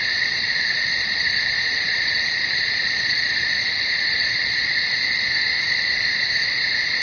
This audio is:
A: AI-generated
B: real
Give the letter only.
B